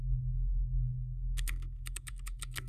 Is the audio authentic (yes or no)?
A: no